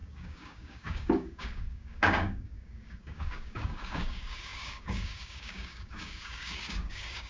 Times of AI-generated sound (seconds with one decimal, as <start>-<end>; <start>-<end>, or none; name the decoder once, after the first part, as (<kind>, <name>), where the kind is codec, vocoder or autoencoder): 0.0-7.3 (codec, DAC)